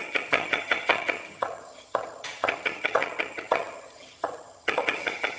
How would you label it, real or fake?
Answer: fake